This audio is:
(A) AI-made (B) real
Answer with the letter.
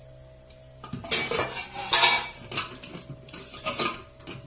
B